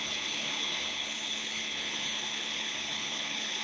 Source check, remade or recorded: remade